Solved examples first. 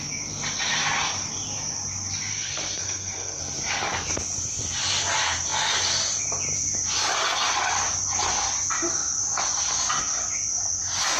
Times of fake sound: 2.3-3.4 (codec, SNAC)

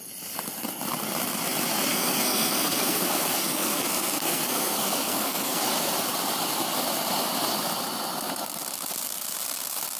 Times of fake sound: 1.9-5.6 (codec, SNAC)

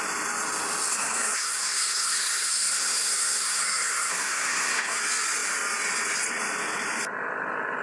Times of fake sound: 0.9-5.0 (codec, SNAC)

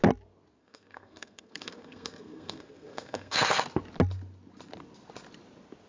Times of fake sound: 0.6-3.6 (codec, SNAC)

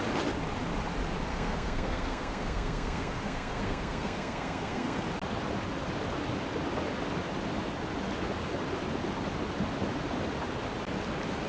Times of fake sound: 1.3-5.0 (codec, SNAC)

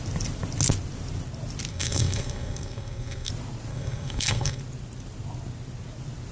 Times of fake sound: 1.7-3.3 (codec, SNAC); 3.7-4.6

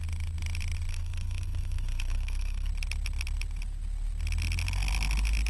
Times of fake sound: 0.9-2.7 (codec, SNAC)

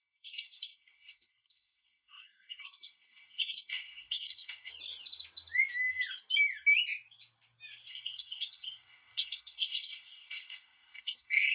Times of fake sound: 0.0-4.7 (codec, SNAC); 7.9-11.5